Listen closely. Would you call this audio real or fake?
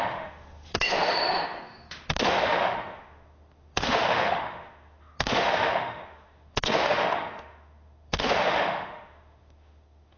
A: fake